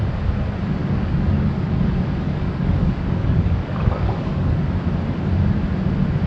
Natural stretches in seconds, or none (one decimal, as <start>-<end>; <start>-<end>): 0.0-0.8; 4.6-6.3